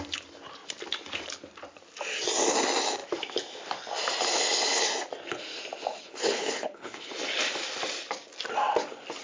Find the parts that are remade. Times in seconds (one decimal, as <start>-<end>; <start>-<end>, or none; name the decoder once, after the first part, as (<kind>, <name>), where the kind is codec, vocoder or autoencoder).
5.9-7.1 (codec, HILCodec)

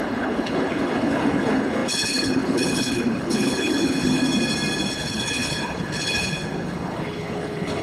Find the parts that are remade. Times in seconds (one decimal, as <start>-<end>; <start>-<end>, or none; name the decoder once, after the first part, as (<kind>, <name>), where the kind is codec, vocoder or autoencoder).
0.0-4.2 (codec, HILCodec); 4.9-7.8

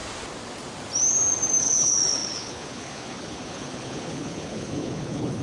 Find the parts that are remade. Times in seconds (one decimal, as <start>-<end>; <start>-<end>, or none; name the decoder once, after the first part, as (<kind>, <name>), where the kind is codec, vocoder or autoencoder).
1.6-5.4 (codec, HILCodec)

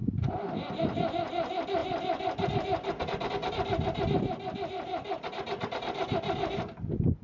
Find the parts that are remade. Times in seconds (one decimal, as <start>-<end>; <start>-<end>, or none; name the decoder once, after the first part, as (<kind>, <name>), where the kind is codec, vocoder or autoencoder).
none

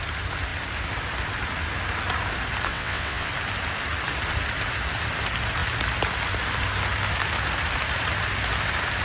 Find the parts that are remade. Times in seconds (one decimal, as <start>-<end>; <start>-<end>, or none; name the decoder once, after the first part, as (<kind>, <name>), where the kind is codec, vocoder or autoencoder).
2.7-3.3 (vocoder, WaveNeXt)